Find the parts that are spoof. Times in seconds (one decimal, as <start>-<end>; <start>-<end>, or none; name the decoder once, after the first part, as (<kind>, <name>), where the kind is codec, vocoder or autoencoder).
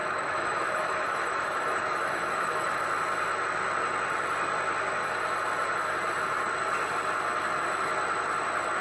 0.0-2.8 (autoencoder, DAC-VAE)